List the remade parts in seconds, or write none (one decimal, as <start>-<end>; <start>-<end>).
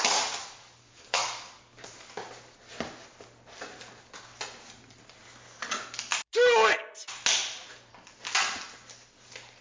0.4-2.1